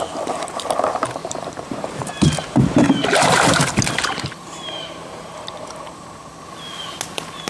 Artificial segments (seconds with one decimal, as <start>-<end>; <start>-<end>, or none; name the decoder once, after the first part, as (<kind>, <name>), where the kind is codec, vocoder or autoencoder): 1.2-3.7 (vocoder, BigVGAN v2); 4.4-6.3